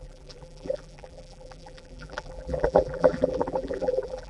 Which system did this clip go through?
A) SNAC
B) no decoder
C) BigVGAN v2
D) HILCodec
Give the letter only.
C